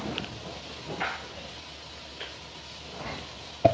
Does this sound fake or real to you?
real